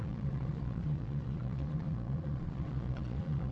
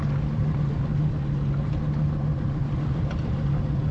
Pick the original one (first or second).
second